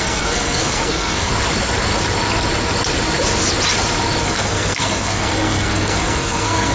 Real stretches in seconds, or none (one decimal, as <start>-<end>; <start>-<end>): 1.3-4.2